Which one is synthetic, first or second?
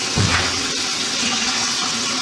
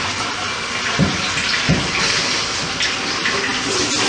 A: first